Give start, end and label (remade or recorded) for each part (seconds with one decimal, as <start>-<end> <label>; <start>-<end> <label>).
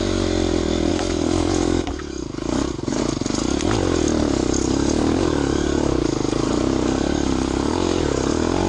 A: 0.0-0.9 recorded; 0.9-3.0 remade; 3.0-4.2 recorded; 4.2-8.7 remade